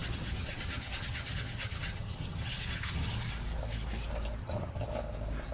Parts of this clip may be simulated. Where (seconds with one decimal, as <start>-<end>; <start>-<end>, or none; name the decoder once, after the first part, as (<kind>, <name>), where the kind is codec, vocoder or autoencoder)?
0.0-3.3 (vocoder, HiFi-GAN); 4.4-4.9